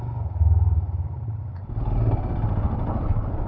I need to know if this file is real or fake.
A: real